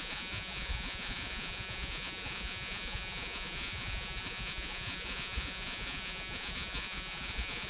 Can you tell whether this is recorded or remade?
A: remade